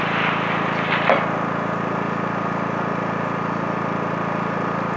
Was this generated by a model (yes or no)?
no